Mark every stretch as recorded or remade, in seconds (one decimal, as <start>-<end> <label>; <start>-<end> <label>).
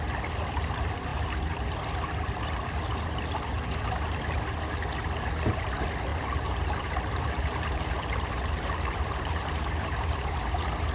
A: 0.0-6.1 recorded; 6.1-10.3 remade; 10.3-10.9 recorded